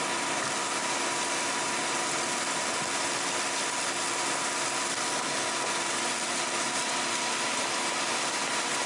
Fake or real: real